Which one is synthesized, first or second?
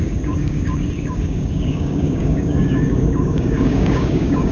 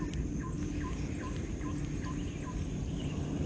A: first